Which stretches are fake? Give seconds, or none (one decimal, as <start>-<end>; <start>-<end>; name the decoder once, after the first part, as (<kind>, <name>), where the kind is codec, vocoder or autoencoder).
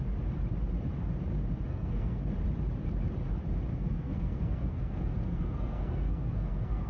1.7-2.3 (codec, SNAC); 3.7-6.9